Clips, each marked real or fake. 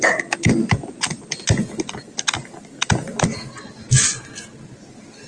real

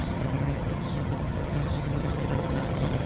fake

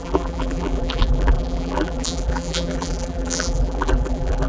fake